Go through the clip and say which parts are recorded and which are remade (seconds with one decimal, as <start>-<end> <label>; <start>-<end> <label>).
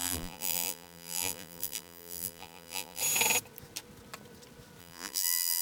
0.0-3.0 remade; 3.0-4.8 recorded; 4.8-5.6 remade